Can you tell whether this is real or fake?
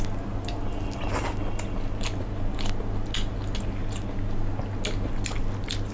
real